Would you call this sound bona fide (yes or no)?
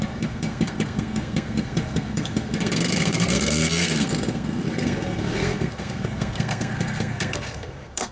no